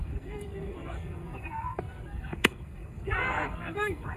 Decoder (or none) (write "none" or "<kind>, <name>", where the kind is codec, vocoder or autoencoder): codec, SNAC